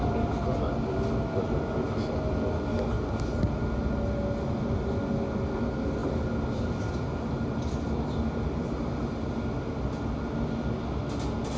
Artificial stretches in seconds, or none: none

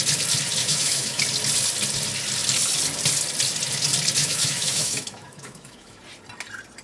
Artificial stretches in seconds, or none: 0.6-1.2; 4.2-6.0

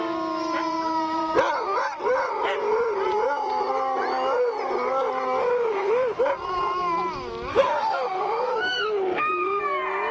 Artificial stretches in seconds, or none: 5.4-6.2; 7.5-9.6

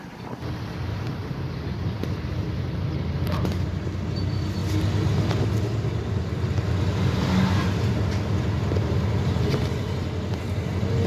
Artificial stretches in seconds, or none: none

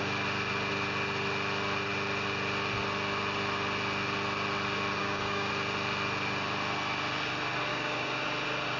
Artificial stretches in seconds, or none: 5.0-5.5; 7.7-8.2

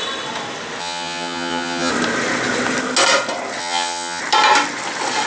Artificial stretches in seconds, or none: 0.8-1.9; 3.6-4.2

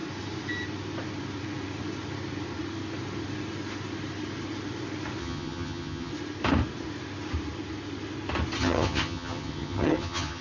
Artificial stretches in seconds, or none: 5.2-6.1; 8.6-10.4